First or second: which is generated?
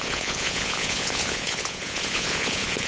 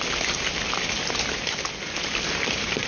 first